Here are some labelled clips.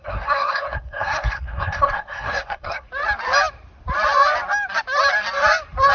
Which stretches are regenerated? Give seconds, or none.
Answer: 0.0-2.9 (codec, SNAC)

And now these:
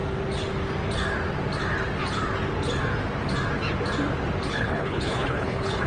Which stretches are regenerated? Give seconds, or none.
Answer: 4.5-5.9 (codec, HILCodec)

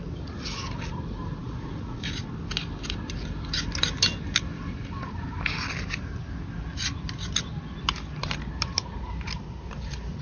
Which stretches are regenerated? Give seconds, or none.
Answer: 1.4-2.0 (vocoder, Vocos)